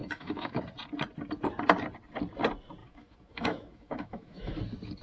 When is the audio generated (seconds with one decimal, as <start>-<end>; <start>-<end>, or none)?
0.0-0.6; 2.8-4.6